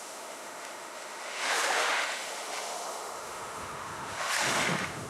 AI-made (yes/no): yes